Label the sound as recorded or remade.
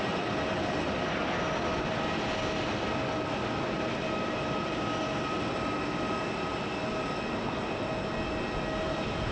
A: recorded